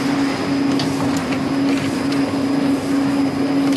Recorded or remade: recorded